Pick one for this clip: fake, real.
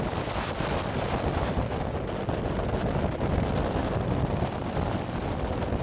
real